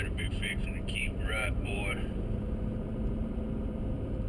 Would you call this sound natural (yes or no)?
no